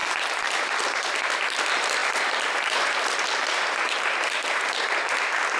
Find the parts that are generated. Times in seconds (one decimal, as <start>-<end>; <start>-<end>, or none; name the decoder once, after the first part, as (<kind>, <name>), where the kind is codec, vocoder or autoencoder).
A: 0.0-0.8 (vocoder, BigVGAN v2); 2.0-5.6